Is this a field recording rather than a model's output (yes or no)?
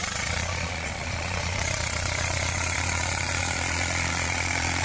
no